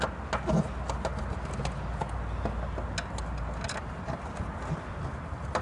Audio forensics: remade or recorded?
recorded